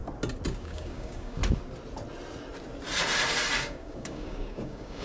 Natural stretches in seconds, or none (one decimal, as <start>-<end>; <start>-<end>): 0.0-0.6; 1.4-3.6